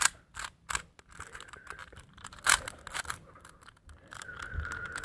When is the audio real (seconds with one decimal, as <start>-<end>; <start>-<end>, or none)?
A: 0.0-1.8; 2.4-5.0